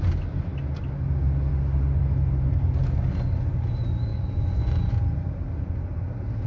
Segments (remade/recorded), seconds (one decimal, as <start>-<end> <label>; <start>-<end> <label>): 0.0-4.1 recorded; 4.1-4.9 remade; 4.9-6.5 recorded